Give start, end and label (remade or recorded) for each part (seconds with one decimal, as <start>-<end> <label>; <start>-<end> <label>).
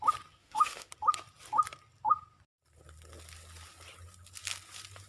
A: 0.0-0.4 recorded; 0.4-0.9 remade; 0.9-5.1 recorded